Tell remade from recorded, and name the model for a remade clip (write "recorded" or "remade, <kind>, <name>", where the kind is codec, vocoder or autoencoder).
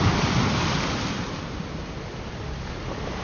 remade, vocoder, BigVGAN v2